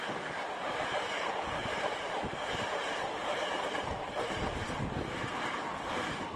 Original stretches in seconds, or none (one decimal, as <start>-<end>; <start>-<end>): 0.0-1.6; 5.4-6.4